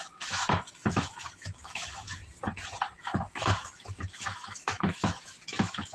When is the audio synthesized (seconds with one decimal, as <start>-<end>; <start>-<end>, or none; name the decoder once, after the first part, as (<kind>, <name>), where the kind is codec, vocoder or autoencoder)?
0.0-2.2 (autoencoder, DAC-VAE); 3.0-5.9